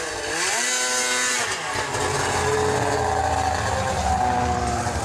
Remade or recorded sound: recorded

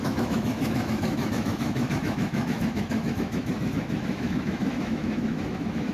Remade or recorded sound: remade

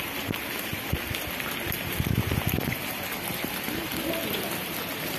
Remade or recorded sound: recorded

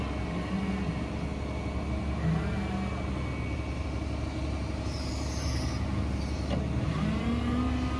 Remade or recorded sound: recorded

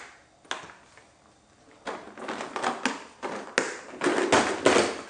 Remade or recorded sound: recorded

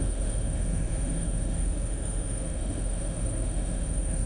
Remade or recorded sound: remade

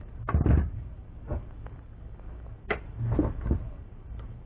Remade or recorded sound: recorded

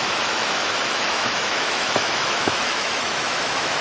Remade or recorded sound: remade